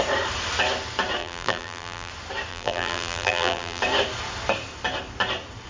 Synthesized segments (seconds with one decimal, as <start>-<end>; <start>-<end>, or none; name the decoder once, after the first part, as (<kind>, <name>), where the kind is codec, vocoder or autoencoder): 1.2-2.1 (vocoder, BigVGAN v2); 2.5-3.8